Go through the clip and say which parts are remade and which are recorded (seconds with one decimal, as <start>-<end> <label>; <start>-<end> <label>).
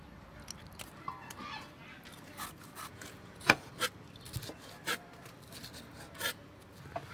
0.0-2.9 recorded; 2.9-3.7 remade; 3.7-7.1 recorded